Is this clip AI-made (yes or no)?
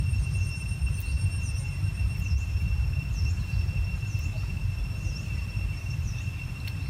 yes